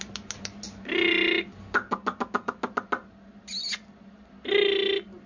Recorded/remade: recorded